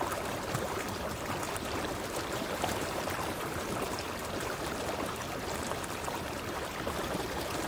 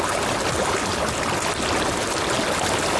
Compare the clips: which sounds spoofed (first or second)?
first